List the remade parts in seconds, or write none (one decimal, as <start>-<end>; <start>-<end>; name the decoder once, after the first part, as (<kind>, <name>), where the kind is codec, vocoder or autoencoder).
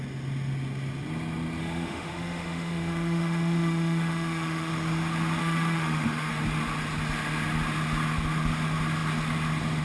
1.6-4.7 (autoencoder, DAC-VAE); 5.4-6.3